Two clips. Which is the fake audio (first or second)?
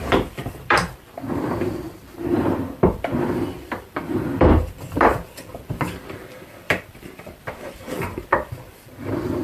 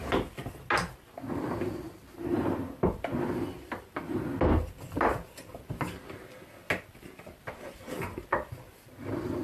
first